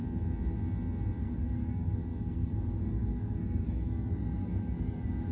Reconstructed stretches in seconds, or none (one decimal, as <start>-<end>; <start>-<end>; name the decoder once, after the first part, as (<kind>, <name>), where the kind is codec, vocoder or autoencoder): 1.2-5.3 (codec, SNAC)